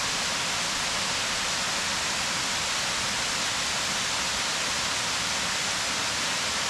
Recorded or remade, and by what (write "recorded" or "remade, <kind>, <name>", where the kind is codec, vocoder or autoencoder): recorded